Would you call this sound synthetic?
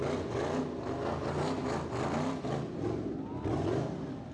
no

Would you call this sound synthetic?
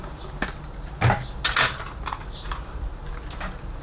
no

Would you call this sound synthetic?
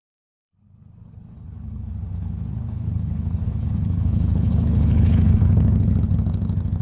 yes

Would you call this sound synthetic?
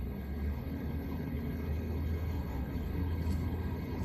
yes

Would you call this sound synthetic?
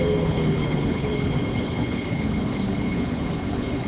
yes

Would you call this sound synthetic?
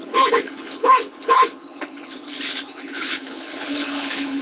yes